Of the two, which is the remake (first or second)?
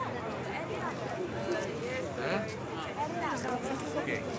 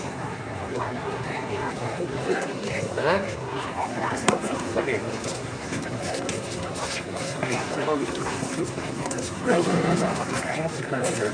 second